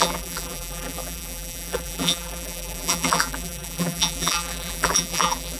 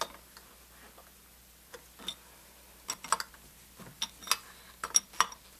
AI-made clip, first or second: first